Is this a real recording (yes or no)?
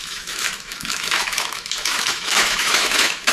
no